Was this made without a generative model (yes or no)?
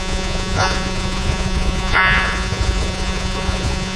no